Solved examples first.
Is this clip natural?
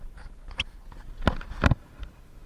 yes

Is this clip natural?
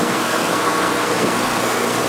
no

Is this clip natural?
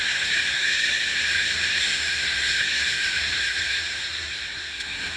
no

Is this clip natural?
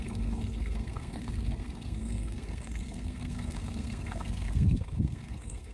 no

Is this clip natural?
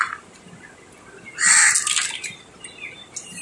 yes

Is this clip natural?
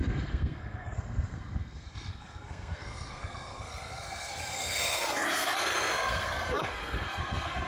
no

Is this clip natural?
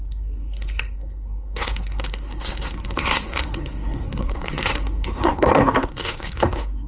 no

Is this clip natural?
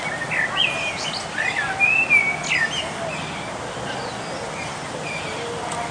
yes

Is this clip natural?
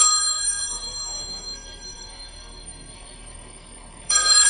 no